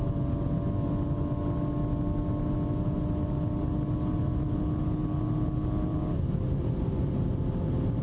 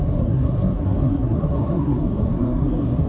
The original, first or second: first